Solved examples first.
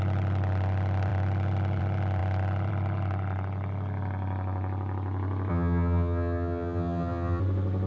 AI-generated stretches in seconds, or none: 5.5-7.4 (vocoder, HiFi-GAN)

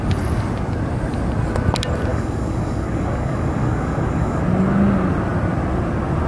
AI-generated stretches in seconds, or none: 2.1-4.4 (codec, DAC)

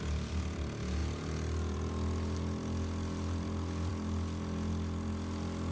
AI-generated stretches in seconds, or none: none